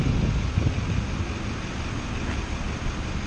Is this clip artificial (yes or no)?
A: no